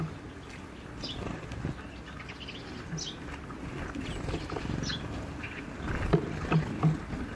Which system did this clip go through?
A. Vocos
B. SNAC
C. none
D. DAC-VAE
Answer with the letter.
C